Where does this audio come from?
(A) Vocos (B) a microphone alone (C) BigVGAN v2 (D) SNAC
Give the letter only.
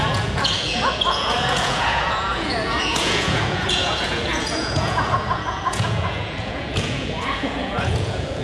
A